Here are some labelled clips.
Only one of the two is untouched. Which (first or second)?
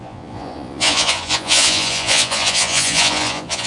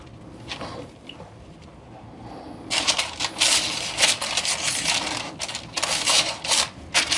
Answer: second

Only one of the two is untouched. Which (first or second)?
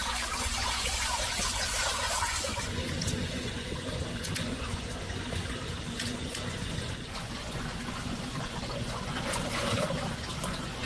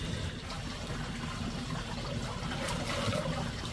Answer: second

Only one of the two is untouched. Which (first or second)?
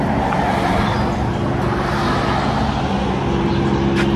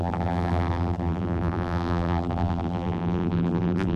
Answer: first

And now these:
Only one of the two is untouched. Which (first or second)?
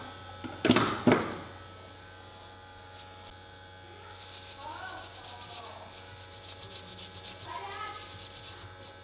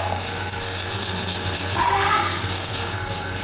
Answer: first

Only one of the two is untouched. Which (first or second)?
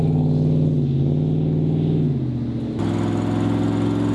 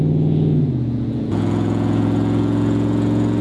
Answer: first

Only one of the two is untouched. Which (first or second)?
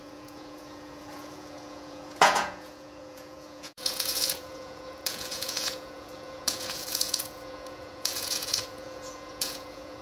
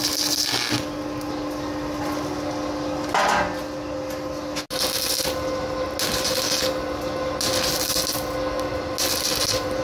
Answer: second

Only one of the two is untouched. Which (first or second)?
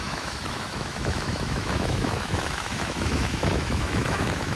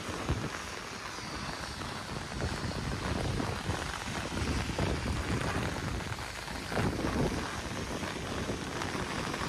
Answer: second